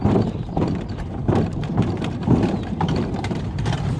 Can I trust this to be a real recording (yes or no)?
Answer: no